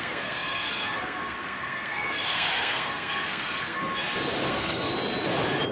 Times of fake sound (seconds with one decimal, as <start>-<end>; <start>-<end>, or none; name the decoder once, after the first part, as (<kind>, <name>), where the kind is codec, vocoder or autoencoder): 0.0-3.8 (codec, SNAC); 4.5-4.9